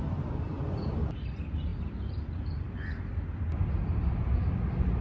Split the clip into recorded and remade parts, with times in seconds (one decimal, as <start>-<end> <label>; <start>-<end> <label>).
0.0-5.0 recorded